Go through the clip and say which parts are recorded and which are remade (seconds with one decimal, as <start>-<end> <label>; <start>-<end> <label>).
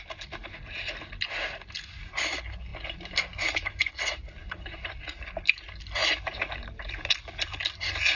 0.0-4.4 recorded; 4.4-5.2 remade; 5.2-6.0 recorded; 6.0-7.1 remade; 7.1-8.2 recorded